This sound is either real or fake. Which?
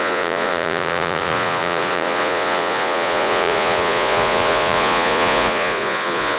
fake